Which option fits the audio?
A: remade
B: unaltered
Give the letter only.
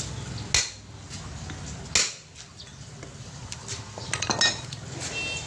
B